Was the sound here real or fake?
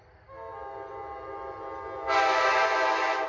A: real